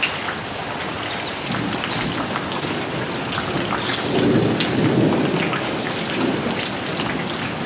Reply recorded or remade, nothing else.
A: recorded